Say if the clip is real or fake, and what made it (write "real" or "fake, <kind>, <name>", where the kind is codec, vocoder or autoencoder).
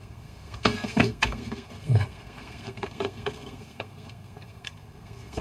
fake, codec, SNAC